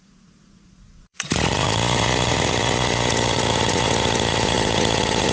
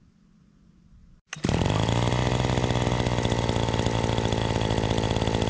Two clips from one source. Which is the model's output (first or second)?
first